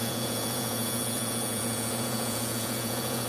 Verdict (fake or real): fake